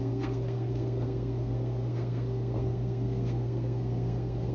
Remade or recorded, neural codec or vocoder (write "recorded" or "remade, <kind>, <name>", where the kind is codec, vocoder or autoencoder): remade, codec, SNAC